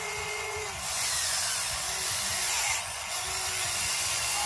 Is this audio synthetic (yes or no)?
yes